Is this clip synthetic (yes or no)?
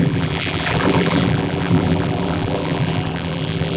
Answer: yes